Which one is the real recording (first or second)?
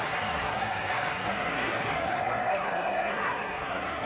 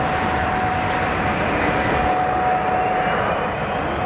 second